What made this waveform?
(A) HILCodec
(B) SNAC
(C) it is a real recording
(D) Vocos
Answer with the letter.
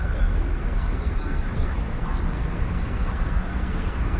B